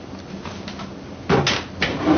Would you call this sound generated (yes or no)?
no